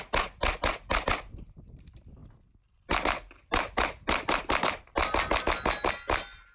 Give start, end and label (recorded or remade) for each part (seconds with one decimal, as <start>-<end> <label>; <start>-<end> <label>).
0.0-6.5 recorded